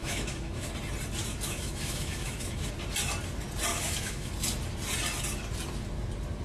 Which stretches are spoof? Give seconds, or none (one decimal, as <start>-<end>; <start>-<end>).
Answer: 0.0-0.7; 1.3-2.7; 3.7-4.3